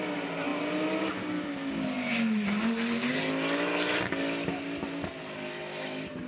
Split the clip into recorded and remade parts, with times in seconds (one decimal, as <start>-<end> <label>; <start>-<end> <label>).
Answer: 0.0-6.3 recorded